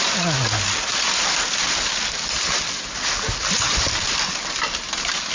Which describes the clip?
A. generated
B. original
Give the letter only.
B